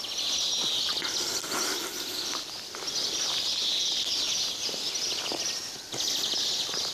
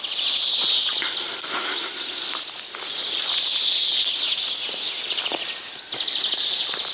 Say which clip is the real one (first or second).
first